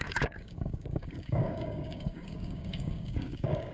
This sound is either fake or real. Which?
fake